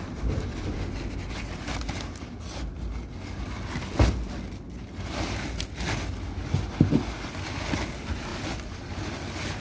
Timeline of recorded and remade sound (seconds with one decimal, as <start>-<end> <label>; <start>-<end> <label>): 0.0-9.6 recorded